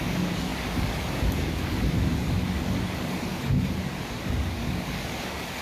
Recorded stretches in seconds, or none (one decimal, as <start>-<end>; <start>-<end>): none

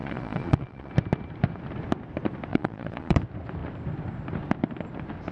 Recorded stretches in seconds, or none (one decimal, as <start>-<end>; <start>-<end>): 0.9-2.5; 3.2-5.3

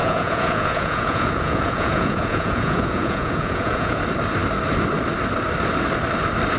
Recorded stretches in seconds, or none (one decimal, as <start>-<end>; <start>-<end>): 4.0-6.6

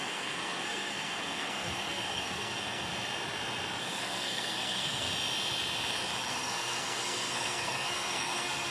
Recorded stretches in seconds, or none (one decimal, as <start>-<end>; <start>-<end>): 2.9-3.8; 5.1-6.3

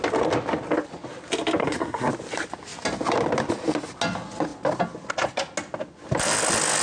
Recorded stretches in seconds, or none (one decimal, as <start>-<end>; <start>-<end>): 0.0-1.6; 2.1-6.8

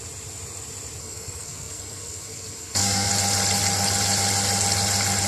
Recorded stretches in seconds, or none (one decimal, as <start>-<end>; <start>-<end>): 0.0-1.0; 3.1-5.3

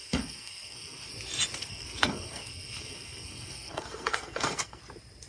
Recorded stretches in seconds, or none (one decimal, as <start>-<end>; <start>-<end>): 1.1-1.6; 4.8-5.3